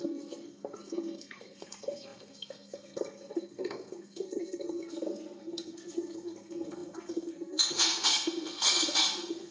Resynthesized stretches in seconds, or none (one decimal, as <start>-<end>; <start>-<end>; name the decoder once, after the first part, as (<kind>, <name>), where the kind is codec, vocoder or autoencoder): 0.0-9.5 (codec, SNAC)